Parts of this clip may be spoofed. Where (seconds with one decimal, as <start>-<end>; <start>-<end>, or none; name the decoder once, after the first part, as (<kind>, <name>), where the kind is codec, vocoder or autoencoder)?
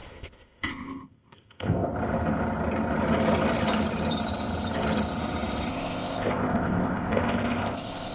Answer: 0.0-1.9 (codec, ZipCodec); 5.7-8.1